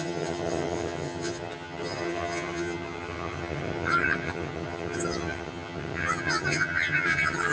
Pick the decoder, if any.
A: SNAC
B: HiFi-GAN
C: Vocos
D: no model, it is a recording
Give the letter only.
B